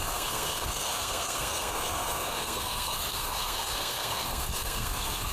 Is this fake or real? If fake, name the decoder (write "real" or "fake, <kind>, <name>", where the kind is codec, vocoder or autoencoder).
fake, codec, SNAC